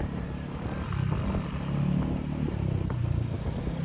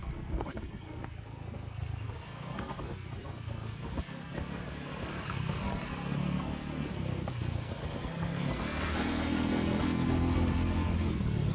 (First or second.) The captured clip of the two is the first